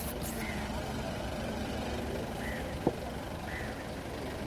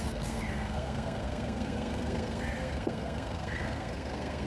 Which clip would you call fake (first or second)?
second